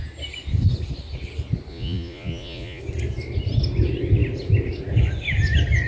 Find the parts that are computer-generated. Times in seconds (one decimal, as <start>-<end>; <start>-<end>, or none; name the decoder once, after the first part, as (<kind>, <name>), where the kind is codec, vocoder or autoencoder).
1.7-2.8 (vocoder, Vocos)